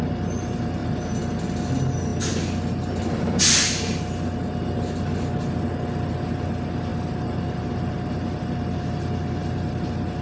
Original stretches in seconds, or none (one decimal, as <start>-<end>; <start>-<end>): 0.0-10.2